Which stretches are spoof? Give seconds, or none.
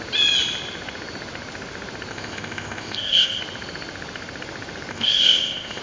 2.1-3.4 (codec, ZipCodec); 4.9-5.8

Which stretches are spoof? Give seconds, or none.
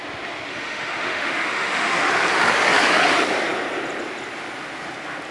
0.5-2.1 (autoencoder, DAC-VAE)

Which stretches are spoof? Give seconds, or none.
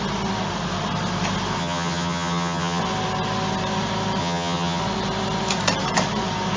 1.6-2.8 (vocoder, HiFi-GAN); 4.2-4.8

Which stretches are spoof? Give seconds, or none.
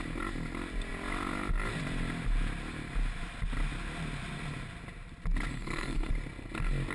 5.5-6.1 (codec, SNAC)